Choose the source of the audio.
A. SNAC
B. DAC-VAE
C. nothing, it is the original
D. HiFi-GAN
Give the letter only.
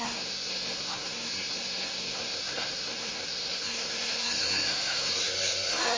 A